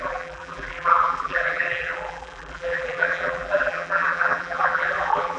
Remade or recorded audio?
remade